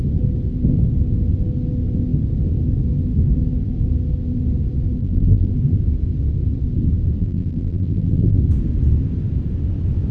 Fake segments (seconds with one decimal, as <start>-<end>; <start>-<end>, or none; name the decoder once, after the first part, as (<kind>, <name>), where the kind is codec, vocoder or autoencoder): 5.0-5.5 (vocoder, BigVGAN v2); 7.2-8.4